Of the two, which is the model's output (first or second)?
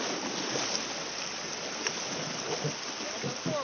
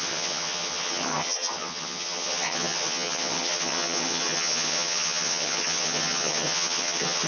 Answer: second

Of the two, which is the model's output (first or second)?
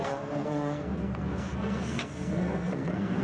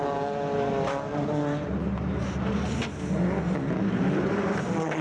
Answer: first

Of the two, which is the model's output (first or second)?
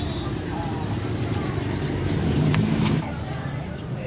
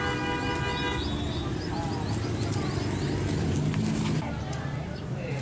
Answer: first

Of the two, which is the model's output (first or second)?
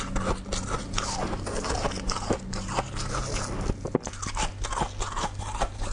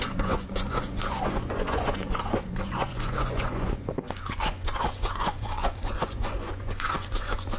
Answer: second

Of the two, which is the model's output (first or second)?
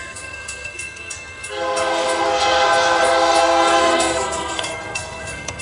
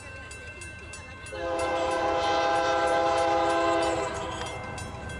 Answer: first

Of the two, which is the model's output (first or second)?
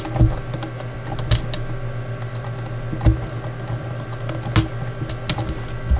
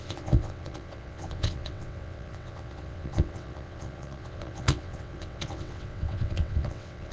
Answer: second